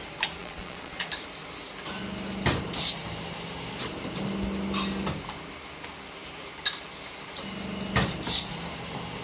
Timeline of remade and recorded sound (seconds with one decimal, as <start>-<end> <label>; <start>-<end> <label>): 0.0-0.4 recorded; 0.4-1.1 remade; 1.1-9.2 recorded